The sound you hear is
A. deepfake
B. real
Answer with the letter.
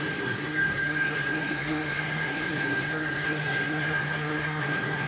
A